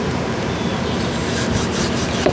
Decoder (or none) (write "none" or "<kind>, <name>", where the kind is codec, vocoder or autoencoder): vocoder, BigVGAN v2